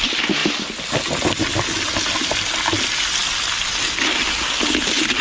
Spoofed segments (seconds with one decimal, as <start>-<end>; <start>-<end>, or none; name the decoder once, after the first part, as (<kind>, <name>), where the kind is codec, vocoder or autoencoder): none